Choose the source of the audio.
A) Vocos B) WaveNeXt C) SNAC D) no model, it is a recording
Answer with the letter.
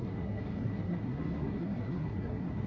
C